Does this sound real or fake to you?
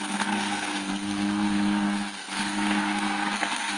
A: fake